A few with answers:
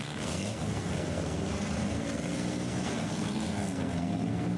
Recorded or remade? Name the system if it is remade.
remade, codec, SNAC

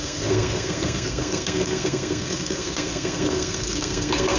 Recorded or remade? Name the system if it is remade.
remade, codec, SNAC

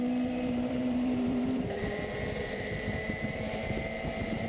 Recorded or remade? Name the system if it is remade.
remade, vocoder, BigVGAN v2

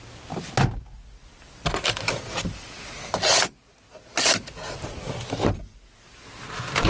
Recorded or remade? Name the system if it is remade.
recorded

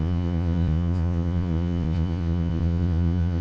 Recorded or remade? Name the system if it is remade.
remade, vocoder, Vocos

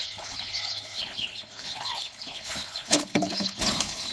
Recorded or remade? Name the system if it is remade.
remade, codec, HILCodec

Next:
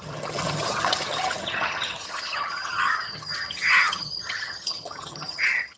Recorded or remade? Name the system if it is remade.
remade, vocoder, HiFi-GAN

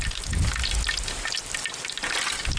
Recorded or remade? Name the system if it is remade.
recorded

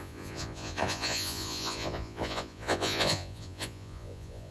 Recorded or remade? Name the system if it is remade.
remade, vocoder, Vocos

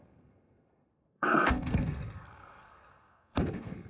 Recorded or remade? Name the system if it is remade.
remade, codec, SNAC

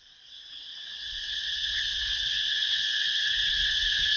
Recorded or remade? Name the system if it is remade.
remade, vocoder, WaveNeXt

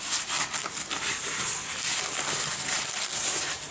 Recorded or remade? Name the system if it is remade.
recorded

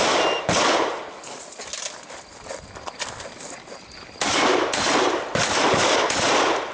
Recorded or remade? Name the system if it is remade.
recorded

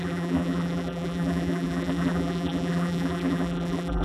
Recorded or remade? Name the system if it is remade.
remade, vocoder, BigVGAN v2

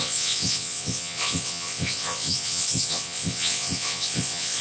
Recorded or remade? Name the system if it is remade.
remade, vocoder, WaveNeXt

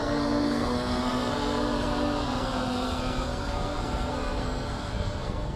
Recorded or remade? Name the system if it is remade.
remade, codec, SNAC